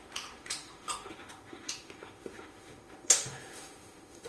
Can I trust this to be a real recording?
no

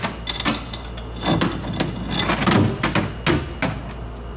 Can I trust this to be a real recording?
yes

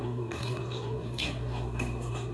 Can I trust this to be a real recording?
no